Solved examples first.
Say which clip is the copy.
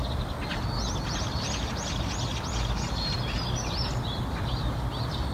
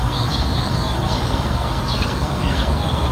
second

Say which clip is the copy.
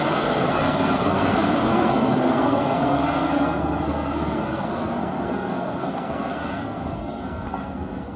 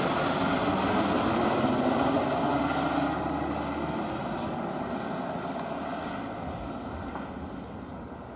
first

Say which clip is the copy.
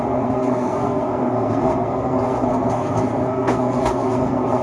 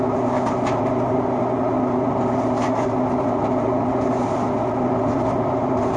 first